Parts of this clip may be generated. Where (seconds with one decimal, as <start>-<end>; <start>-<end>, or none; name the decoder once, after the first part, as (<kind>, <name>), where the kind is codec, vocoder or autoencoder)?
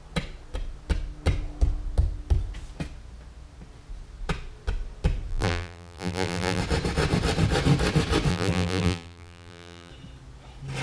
5.3-6.6 (vocoder, BigVGAN v2); 8.3-9.9